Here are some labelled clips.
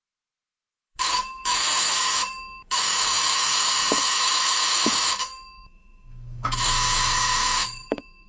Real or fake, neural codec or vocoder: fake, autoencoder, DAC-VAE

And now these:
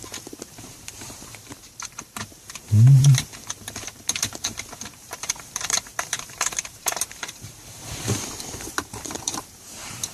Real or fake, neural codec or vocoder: fake, vocoder, BigVGAN v2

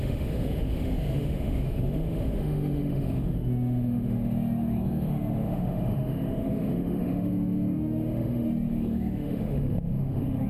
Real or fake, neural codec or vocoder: fake, autoencoder, DAC-VAE